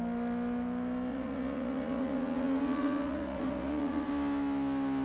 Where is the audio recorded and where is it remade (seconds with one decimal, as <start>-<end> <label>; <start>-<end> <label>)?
0.0-1.1 recorded; 1.1-4.1 remade; 4.1-5.0 recorded